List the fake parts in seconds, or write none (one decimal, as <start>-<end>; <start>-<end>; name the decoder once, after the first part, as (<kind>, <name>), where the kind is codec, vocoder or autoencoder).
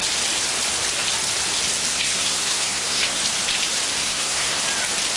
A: 1.9-3.2 (codec, SNAC); 4.0-4.6